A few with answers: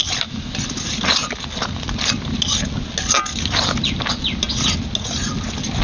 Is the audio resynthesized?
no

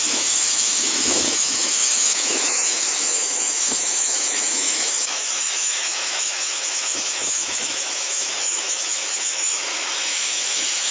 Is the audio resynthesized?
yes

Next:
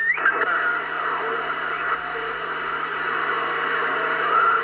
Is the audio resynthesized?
no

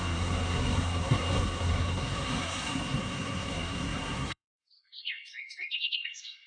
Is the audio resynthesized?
yes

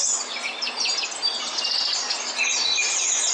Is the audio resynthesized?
no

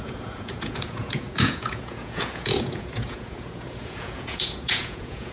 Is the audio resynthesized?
yes